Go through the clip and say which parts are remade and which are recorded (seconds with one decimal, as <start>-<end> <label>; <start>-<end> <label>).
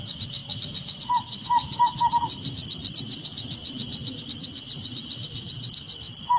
0.0-6.4 recorded